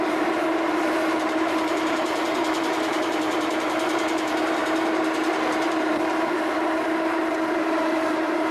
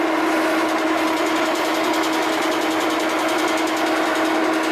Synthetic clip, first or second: first